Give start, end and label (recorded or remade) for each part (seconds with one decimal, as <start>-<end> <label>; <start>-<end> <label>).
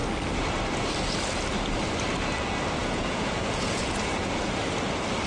0.0-2.8 recorded; 2.8-4.5 remade; 4.5-5.3 recorded